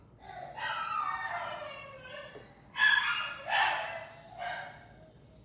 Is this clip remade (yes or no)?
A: no